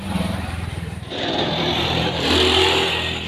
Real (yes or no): no